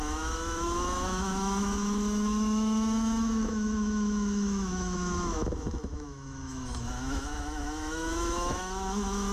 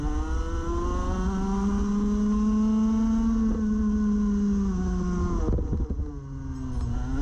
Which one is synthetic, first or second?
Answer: first